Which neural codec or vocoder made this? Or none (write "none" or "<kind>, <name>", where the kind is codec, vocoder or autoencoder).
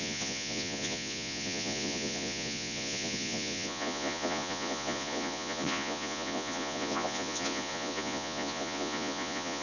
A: vocoder, Vocos